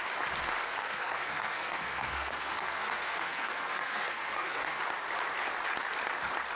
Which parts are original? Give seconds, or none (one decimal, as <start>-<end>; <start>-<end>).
0.0-0.8; 4.8-6.6